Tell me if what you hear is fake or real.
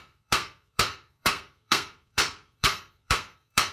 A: fake